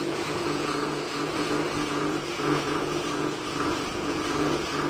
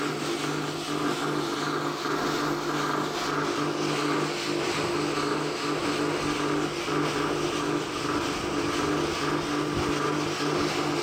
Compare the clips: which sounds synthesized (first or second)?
first